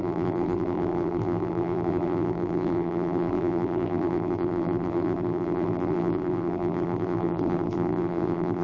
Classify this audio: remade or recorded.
remade